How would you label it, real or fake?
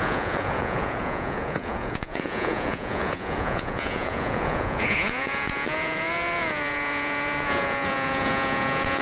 fake